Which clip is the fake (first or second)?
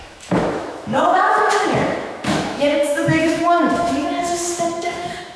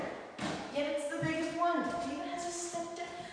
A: first